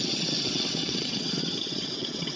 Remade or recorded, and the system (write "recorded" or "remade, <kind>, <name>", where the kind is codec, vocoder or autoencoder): remade, vocoder, WaveNeXt